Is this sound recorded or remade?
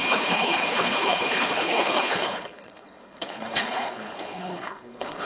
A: remade